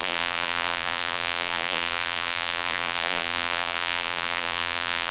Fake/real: fake